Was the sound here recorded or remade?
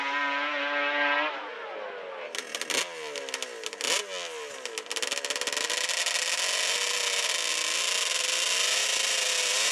recorded